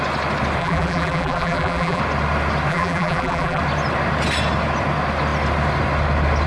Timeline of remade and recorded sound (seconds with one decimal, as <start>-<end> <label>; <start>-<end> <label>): 0.0-0.6 recorded; 0.6-2.0 remade; 2.0-2.7 recorded; 2.7-3.6 remade; 3.6-6.5 recorded